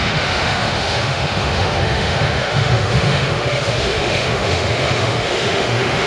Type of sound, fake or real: fake